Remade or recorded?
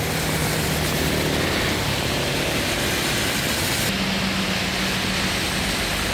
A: recorded